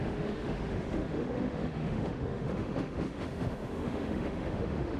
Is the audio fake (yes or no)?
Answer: yes